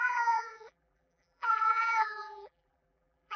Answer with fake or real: fake